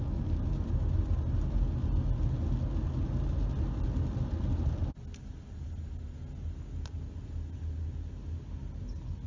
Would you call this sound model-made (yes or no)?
no